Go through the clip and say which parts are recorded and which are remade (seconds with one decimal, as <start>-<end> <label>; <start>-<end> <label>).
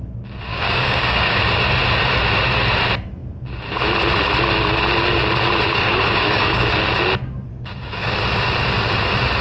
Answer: 0.0-0.5 recorded; 0.5-1.4 remade; 1.4-5.7 recorded; 5.7-6.7 remade; 6.7-7.5 recorded; 7.5-8.1 remade; 8.1-9.4 recorded